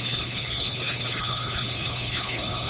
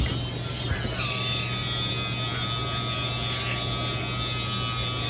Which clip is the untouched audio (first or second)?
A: second